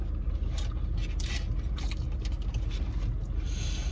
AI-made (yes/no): no